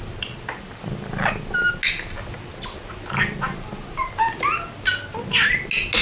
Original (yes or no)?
yes